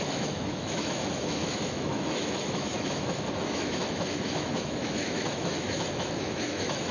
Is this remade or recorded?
remade